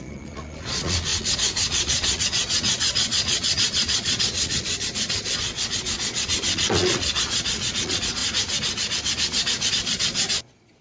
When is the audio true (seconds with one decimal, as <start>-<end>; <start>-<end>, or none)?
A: 8.2-9.7